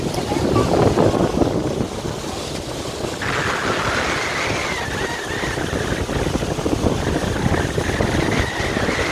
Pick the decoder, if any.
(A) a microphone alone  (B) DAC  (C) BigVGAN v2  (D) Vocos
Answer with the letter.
A